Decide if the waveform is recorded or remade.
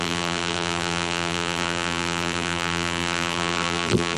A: remade